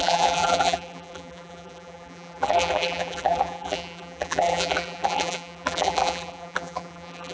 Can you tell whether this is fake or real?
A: fake